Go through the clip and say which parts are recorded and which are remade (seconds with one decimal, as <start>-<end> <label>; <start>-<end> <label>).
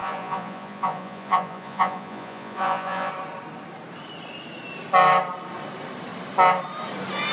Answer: 0.0-3.1 remade; 3.1-7.3 recorded